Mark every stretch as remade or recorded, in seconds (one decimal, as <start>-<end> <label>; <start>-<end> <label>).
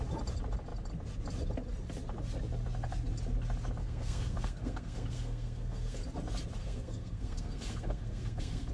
0.0-3.8 recorded; 3.8-6.0 remade; 6.0-6.6 recorded; 6.6-8.7 remade